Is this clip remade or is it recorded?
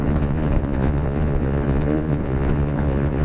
remade